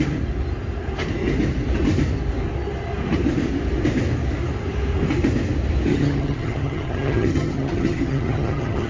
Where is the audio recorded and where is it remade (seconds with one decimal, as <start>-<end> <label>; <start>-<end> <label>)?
0.0-5.9 recorded; 5.9-8.9 remade